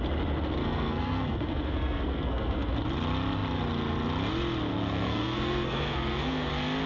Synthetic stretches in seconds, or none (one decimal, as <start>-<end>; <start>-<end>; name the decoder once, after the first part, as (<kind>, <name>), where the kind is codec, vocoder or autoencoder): 0.6-2.7 (codec, SNAC); 4.7-6.5